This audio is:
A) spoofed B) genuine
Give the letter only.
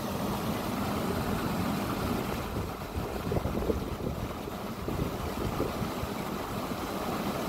B